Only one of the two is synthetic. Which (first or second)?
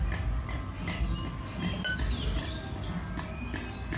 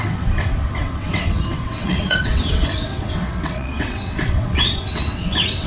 second